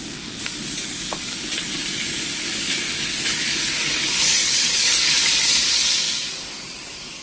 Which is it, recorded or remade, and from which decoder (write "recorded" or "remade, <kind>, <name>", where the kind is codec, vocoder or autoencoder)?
remade, codec, DAC